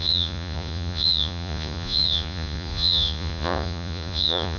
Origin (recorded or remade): remade